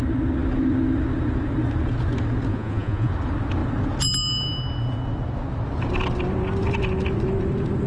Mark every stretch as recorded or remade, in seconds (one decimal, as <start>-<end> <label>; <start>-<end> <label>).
0.0-2.5 recorded; 2.5-3.1 remade; 3.1-7.9 recorded